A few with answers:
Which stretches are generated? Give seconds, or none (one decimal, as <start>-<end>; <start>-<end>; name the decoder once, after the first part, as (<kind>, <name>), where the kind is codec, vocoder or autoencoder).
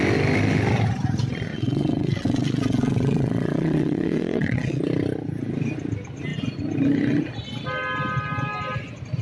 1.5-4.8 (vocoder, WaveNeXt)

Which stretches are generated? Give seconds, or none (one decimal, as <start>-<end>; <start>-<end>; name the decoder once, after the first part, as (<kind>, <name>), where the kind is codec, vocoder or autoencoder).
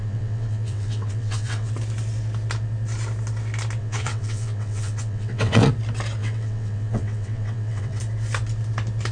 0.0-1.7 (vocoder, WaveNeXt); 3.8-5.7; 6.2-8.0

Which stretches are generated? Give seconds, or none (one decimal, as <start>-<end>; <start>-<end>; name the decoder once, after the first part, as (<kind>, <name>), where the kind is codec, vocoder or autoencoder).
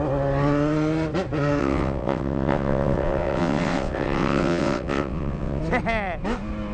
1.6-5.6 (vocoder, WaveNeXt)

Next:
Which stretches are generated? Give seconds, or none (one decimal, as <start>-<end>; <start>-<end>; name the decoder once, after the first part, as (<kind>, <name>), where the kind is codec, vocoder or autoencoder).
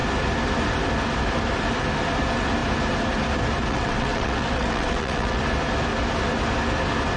3.7-5.4 (vocoder, WaveNeXt)